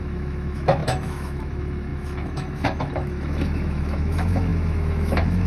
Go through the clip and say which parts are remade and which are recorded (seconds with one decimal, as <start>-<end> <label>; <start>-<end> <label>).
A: 0.0-5.5 remade